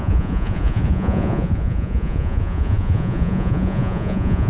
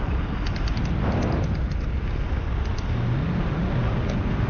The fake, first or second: first